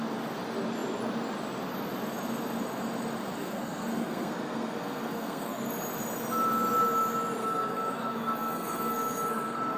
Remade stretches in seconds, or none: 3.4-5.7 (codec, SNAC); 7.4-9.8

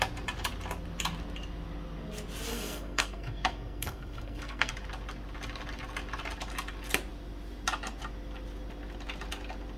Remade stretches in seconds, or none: 2.5-4.7 (codec, SNAC)

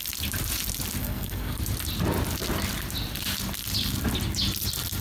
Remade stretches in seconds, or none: 1.0-1.6 (codec, SNAC)

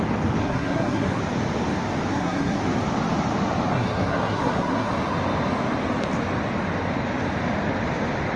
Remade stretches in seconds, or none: 0.4-1.2 (codec, SNAC); 2.1-2.6; 3.7-4.9